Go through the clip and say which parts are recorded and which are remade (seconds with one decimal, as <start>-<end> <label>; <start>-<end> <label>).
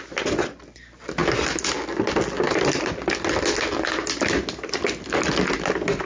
0.0-6.1 recorded